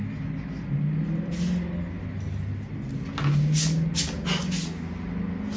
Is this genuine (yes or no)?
yes